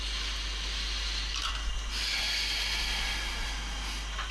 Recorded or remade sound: recorded